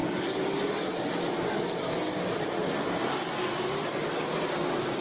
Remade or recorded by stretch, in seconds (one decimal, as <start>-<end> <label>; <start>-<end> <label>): 0.0-5.0 recorded